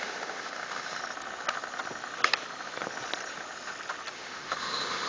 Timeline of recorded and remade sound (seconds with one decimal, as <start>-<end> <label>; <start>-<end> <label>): 0.0-1.0 remade; 1.0-4.1 recorded; 4.1-5.1 remade